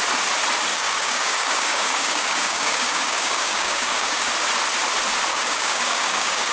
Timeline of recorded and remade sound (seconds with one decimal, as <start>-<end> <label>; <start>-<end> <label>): 0.0-0.7 recorded; 0.7-4.3 remade; 4.3-5.3 recorded; 5.3-6.5 remade